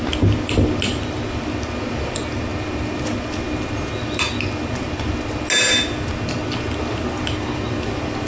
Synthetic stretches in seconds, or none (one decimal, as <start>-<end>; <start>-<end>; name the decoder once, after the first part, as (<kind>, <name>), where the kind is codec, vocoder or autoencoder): none